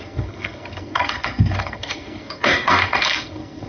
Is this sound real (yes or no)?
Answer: no